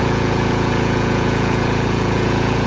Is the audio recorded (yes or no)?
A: no